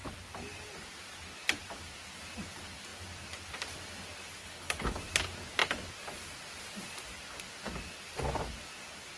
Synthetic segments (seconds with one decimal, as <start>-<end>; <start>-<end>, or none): 4.4-5.0